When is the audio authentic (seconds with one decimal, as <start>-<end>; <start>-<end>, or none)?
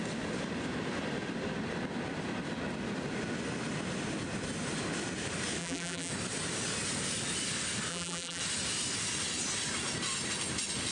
0.0-5.6; 6.1-7.9; 8.4-10.9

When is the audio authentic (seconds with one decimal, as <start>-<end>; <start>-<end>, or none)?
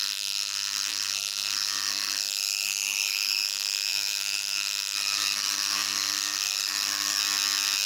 7.2-7.9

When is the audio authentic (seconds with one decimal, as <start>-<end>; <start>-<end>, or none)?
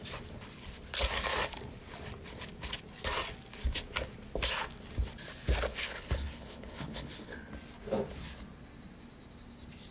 0.0-5.7; 7.5-9.9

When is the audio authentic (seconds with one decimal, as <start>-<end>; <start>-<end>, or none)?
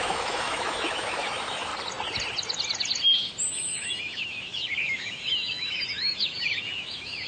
1.7-3.5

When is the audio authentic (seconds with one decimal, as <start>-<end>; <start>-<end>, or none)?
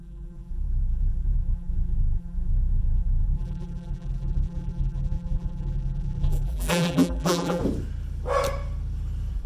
7.6-9.5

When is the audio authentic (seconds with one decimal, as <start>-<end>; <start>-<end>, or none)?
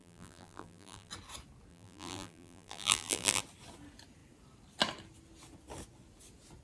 1.1-1.7; 3.4-6.6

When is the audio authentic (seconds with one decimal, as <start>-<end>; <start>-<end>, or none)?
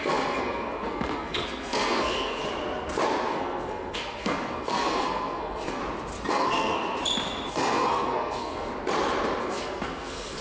2.4-3.3; 5.8-6.3; 7.0-7.5; 8.7-9.4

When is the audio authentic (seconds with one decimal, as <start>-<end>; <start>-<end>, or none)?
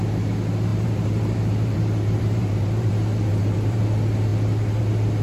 0.0-0.7; 2.9-3.3; 3.8-5.2